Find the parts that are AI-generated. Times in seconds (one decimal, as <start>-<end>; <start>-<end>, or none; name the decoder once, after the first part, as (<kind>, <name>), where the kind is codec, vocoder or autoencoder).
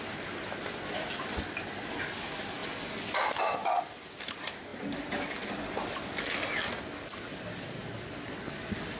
none